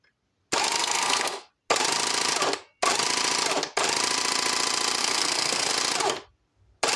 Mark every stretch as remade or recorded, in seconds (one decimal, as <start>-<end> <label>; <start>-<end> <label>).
0.0-0.8 recorded; 0.8-1.5 remade; 1.5-5.0 recorded; 5.0-5.7 remade; 5.7-7.0 recorded